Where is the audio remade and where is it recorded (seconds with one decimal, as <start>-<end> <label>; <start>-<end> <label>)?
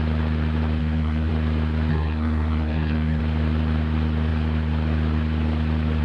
0.0-0.8 recorded; 0.8-1.3 remade; 1.3-1.9 recorded; 1.9-3.2 remade; 3.2-6.0 recorded